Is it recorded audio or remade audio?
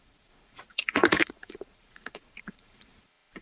remade